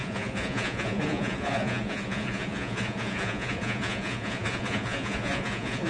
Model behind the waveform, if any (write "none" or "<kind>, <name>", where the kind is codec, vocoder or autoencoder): vocoder, Vocos